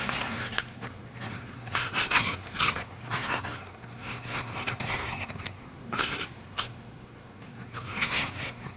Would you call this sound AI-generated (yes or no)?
yes